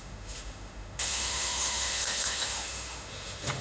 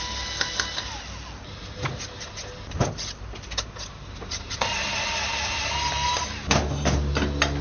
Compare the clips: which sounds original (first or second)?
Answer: second